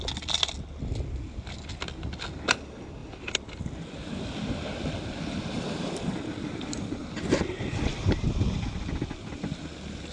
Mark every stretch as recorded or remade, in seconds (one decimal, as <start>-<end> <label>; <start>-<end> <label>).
0.0-3.0 recorded; 3.0-3.6 remade; 3.6-10.1 recorded